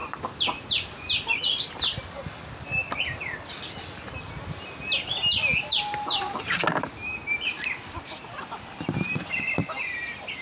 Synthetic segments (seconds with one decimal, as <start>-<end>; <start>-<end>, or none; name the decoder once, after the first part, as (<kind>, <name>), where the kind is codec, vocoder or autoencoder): none